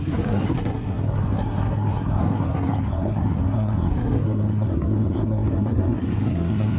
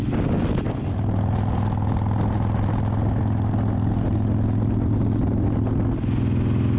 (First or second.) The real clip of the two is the second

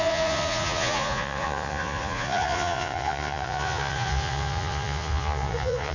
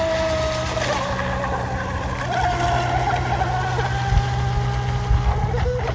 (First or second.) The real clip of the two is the second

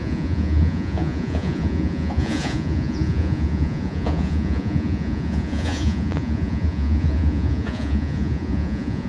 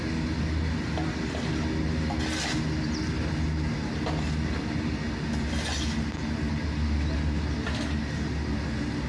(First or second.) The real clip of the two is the second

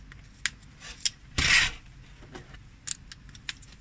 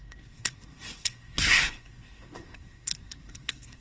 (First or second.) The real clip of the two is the first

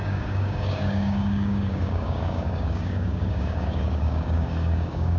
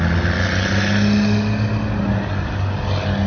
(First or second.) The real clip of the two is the second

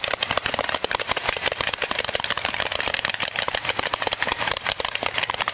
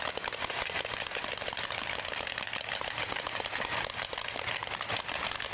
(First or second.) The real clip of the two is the second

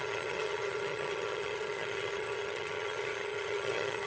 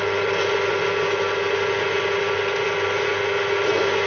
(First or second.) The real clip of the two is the second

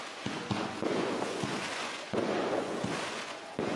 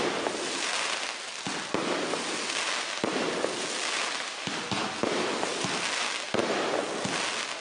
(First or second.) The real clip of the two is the second